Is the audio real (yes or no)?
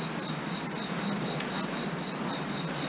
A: yes